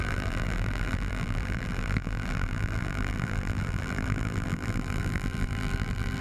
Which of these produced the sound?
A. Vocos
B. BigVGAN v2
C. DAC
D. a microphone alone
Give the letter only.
B